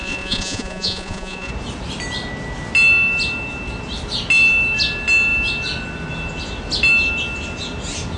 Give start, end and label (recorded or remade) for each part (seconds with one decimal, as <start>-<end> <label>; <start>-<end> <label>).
0.0-1.5 remade; 1.5-8.2 recorded